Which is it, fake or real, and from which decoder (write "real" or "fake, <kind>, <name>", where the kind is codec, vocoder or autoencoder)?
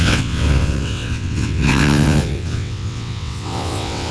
fake, vocoder, WaveNeXt